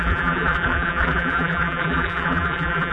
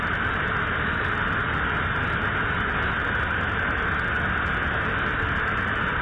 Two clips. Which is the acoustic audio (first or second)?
second